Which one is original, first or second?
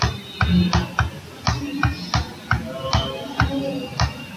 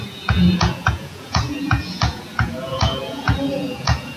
first